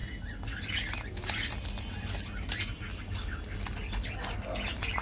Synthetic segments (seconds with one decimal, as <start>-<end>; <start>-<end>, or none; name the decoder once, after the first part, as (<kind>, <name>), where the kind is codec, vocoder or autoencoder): none